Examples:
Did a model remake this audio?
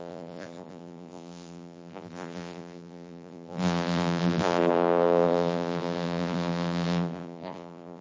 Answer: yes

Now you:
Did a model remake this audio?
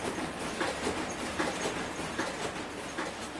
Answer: yes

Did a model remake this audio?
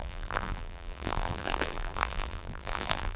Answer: yes